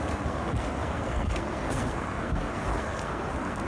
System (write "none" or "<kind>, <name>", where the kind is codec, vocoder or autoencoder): codec, SNAC